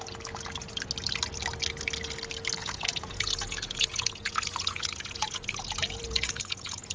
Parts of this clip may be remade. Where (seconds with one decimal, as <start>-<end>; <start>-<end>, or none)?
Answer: 2.6-6.9